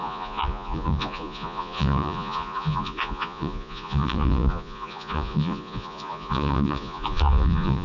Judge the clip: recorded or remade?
remade